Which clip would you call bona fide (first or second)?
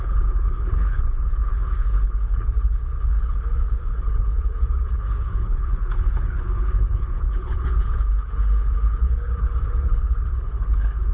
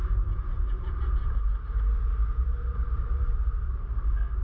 second